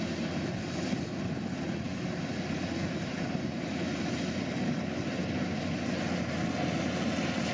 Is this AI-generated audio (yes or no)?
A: no